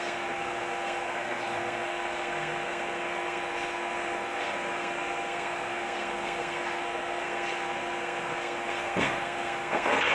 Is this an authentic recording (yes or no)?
no